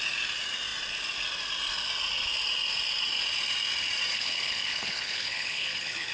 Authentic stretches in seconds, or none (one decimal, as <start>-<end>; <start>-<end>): 0.0-4.1